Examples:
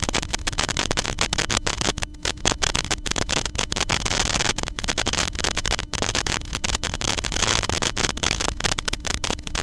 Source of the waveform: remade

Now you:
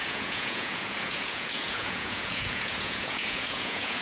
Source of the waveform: remade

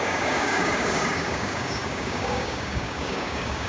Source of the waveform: remade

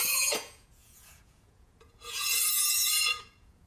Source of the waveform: remade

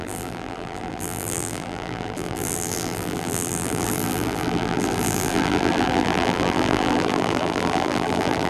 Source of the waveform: remade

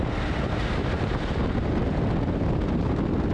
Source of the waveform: recorded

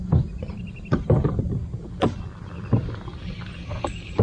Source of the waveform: recorded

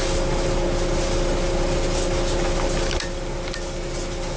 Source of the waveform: recorded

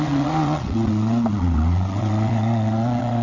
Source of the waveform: remade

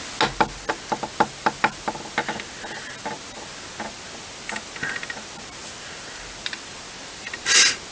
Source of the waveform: recorded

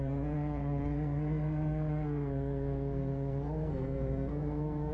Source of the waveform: remade